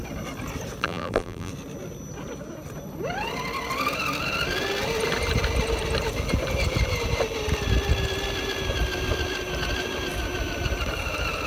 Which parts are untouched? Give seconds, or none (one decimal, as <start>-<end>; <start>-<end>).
0.0-0.8; 1.5-11.5